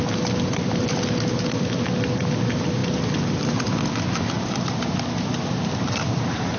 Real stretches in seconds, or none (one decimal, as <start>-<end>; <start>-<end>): 0.0-6.6